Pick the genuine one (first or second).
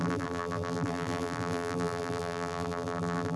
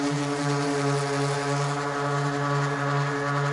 second